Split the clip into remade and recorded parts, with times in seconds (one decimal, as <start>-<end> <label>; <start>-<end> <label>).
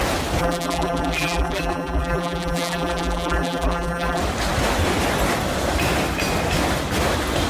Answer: 0.0-0.4 recorded; 0.4-4.2 remade; 4.2-7.5 recorded